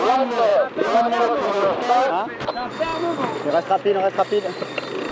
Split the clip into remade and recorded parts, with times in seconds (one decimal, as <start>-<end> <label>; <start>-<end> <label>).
0.0-5.1 recorded

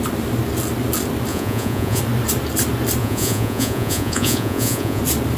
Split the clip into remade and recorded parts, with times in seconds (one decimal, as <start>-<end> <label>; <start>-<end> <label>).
0.0-1.3 recorded; 1.3-2.0 remade; 2.0-3.0 recorded; 3.0-5.0 remade; 5.0-5.4 recorded

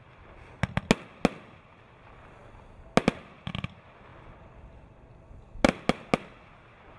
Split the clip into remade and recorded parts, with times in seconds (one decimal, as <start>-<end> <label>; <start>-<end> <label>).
0.0-7.0 recorded

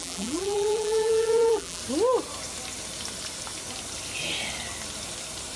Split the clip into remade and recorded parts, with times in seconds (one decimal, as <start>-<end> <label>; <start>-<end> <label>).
0.0-1.8 remade; 1.8-5.6 recorded